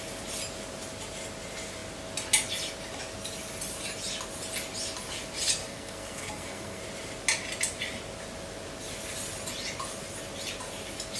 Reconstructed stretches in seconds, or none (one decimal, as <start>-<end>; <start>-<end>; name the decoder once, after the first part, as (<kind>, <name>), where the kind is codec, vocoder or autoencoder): 5.6-6.8 (codec, SNAC)